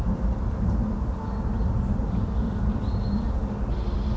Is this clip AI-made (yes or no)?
no